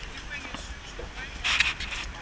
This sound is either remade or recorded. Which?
recorded